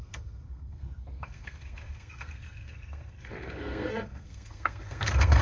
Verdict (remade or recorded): remade